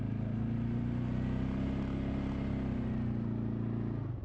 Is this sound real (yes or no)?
yes